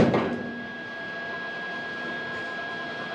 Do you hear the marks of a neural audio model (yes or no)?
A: no